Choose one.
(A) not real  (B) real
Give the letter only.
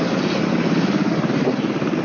B